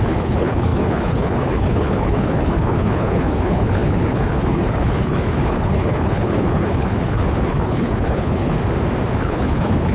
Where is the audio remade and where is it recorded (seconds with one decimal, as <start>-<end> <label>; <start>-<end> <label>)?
0.0-8.6 remade; 8.6-9.2 recorded; 9.2-9.9 remade